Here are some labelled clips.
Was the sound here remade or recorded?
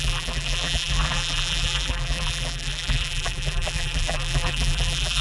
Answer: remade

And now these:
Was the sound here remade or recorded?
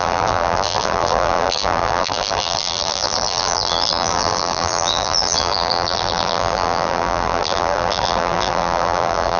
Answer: remade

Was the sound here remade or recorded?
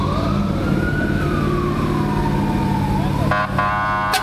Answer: recorded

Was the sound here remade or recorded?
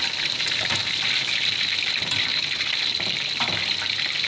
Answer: remade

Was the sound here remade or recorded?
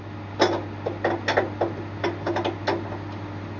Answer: recorded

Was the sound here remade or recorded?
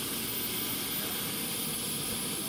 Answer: recorded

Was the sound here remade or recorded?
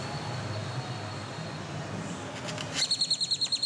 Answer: recorded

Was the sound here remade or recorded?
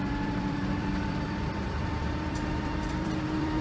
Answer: remade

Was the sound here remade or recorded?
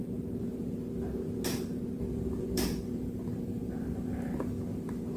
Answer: recorded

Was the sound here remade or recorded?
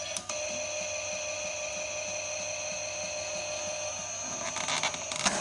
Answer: recorded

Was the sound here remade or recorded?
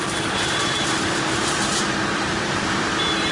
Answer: remade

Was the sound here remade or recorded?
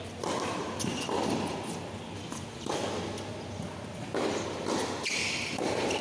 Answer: recorded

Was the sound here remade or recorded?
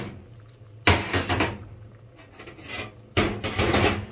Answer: recorded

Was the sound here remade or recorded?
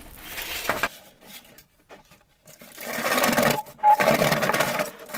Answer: remade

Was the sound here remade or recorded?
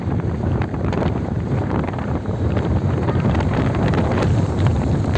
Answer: remade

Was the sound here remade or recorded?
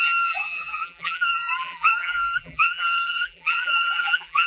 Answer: remade